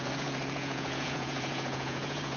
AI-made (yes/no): yes